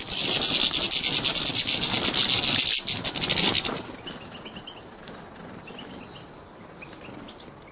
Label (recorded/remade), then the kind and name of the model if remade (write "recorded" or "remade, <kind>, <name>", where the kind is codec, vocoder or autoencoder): recorded